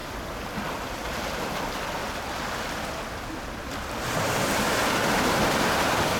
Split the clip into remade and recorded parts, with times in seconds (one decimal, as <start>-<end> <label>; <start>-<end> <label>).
0.0-0.7 recorded; 0.7-2.0 remade; 2.0-5.3 recorded; 5.3-6.2 remade